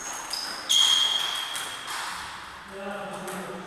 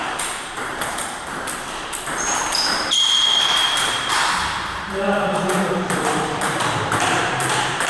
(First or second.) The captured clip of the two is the first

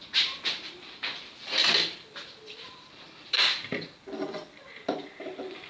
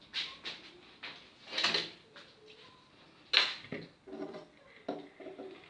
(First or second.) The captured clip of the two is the second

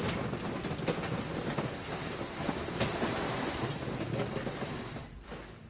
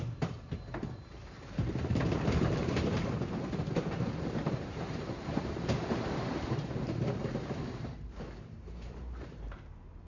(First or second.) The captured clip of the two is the first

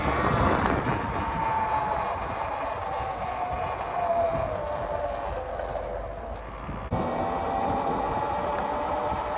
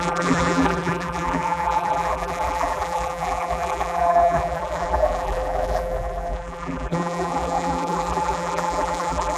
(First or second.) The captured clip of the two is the first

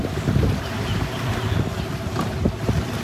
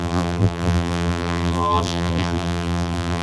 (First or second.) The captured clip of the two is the first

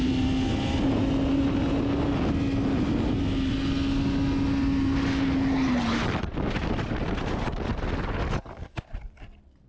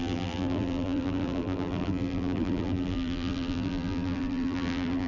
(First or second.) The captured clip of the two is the first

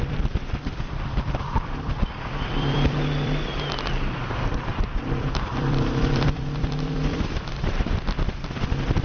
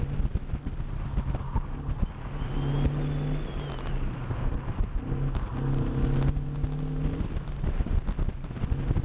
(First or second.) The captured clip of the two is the second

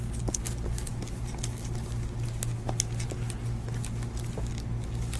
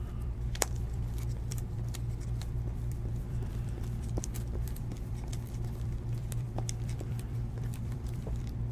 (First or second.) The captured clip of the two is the first